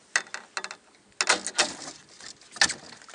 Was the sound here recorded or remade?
recorded